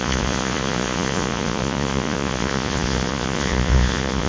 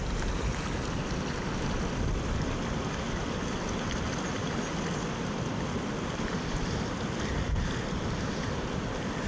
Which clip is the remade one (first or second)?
first